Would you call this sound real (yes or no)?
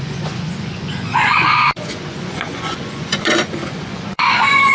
no